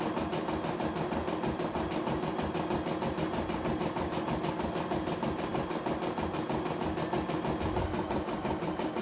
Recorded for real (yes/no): yes